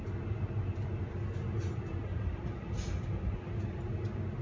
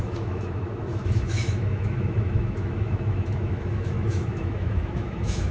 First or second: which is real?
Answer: first